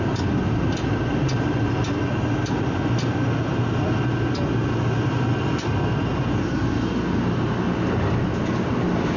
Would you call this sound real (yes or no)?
yes